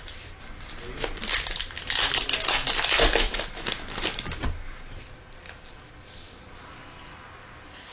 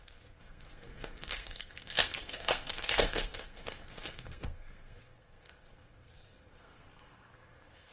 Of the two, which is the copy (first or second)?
second